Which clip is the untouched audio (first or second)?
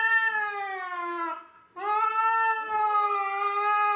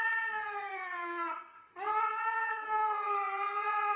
first